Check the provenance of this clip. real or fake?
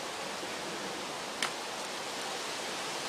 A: real